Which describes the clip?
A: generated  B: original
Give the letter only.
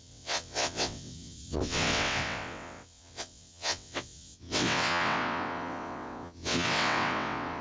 A